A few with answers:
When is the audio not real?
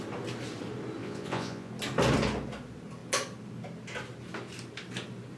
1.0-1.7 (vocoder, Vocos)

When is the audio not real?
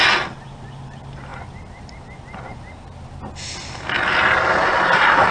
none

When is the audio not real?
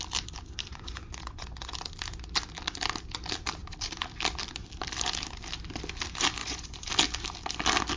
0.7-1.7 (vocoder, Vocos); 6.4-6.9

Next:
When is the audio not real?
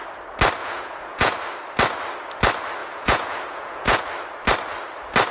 0.6-1.4 (vocoder, Vocos); 2.8-4.0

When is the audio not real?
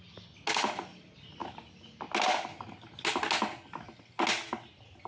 none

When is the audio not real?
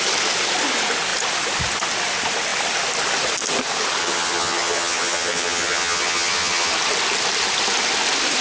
4.0-6.7 (vocoder, HiFi-GAN)